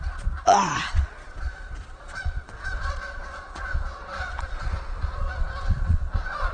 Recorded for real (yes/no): no